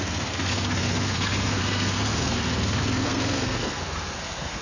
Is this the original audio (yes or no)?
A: no